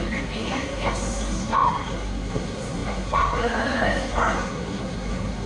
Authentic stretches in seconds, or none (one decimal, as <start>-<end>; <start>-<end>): none